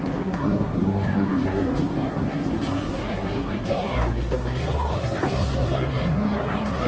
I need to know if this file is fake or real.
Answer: fake